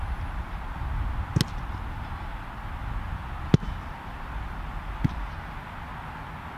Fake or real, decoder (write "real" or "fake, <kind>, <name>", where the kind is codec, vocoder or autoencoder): real